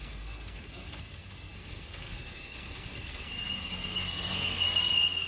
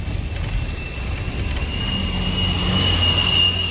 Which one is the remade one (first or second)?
first